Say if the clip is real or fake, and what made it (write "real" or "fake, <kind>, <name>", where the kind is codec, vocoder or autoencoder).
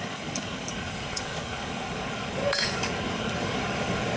fake, codec, DAC